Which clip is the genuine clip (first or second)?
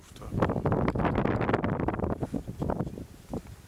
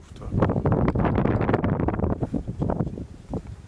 first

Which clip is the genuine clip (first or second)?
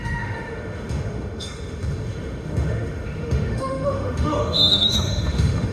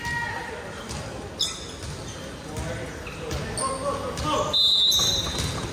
second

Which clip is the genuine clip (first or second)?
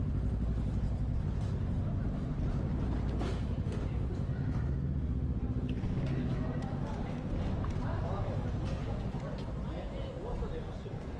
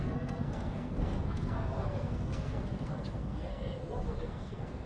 first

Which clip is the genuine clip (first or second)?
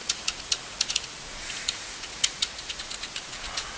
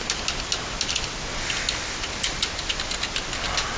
second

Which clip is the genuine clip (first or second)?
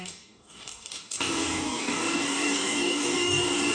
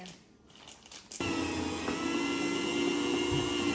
second